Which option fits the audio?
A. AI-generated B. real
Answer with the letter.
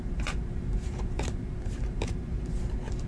A